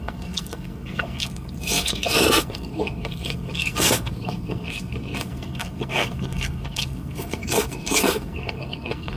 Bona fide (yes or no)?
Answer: no